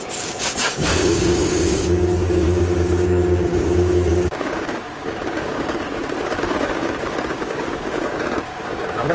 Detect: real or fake fake